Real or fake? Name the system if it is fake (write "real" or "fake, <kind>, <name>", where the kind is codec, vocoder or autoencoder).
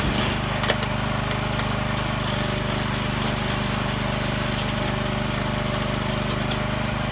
real